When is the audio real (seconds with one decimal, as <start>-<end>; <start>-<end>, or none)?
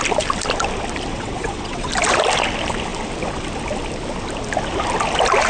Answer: 0.0-1.1; 1.9-5.5